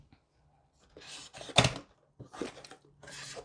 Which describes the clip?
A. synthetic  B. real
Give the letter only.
B